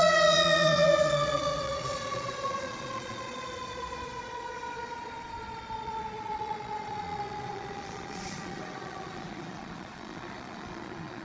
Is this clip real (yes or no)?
no